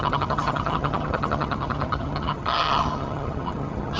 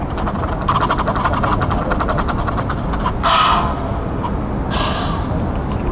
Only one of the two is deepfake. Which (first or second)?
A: first